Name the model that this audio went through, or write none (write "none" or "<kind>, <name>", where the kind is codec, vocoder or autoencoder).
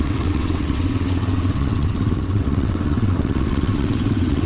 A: vocoder, WaveNeXt